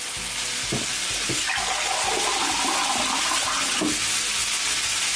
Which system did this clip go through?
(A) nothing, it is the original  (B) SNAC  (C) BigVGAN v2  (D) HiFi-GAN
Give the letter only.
A